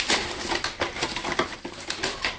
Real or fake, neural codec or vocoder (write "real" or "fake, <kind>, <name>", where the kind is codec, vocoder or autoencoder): real